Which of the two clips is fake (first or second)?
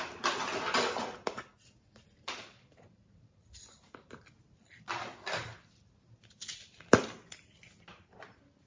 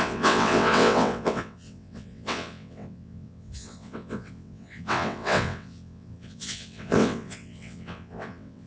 second